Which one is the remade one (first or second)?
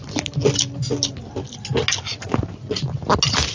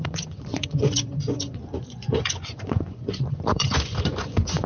second